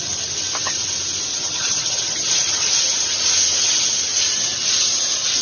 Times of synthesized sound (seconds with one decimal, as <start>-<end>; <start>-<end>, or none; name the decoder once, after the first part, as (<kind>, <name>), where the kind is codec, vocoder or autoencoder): 1.3-2.3 (vocoder, HiFi-GAN)